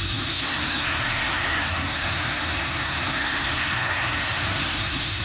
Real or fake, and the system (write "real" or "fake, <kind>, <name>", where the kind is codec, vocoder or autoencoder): fake, codec, SNAC